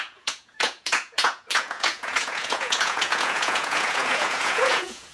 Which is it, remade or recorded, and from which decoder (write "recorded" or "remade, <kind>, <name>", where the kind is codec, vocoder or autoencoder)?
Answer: remade, vocoder, Vocos